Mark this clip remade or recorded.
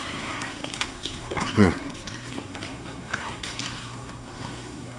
remade